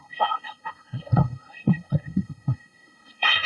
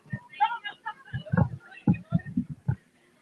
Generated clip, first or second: first